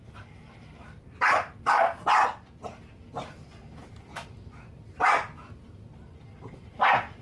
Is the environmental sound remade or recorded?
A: recorded